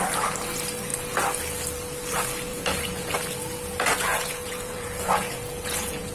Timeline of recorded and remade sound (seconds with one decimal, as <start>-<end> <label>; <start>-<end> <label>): 0.0-2.5 recorded; 2.5-3.1 remade; 3.1-4.1 recorded; 4.1-6.1 remade

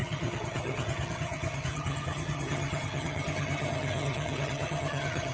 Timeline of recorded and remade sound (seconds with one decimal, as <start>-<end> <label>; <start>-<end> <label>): 0.0-5.3 remade